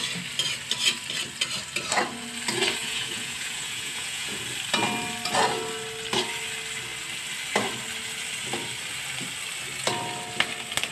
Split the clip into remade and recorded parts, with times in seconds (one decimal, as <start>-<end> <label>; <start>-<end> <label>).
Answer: 0.0-2.8 recorded; 2.8-4.4 remade; 4.4-10.9 recorded